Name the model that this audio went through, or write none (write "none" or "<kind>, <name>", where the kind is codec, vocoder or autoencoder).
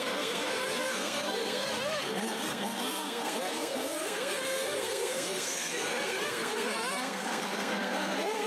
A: codec, SNAC